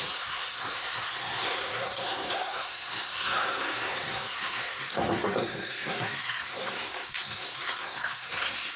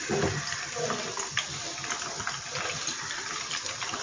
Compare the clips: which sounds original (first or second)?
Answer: second